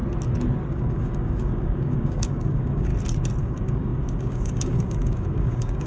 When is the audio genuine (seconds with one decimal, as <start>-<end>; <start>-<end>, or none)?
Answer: 0.0-0.7; 2.9-3.4